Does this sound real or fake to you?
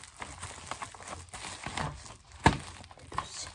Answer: real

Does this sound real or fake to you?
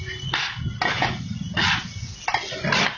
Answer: real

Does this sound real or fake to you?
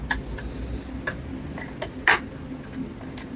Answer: real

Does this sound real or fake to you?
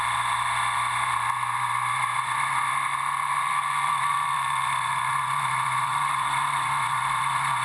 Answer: fake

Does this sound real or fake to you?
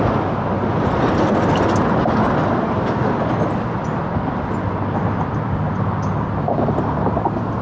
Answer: real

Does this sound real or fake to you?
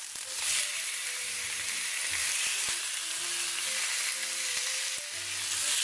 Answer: real